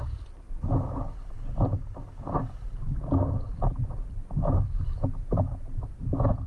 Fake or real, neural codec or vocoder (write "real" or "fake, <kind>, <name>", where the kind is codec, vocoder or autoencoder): real